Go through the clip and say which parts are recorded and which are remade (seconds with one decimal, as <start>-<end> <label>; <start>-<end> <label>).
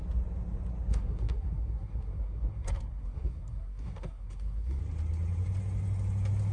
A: 0.0-0.9 recorded; 0.9-4.8 remade; 4.8-6.5 recorded